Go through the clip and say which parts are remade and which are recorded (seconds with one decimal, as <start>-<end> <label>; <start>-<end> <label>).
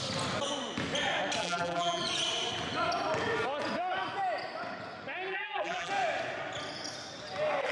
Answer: 0.0-1.4 recorded; 1.4-2.0 remade; 2.0-5.3 recorded; 5.3-5.9 remade; 5.9-7.7 recorded